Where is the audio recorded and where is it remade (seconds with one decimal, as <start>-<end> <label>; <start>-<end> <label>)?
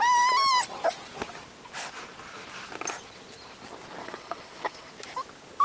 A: 0.0-4.0 recorded; 4.0-4.9 remade; 4.9-5.6 recorded